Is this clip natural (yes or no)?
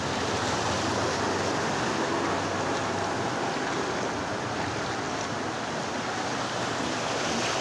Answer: yes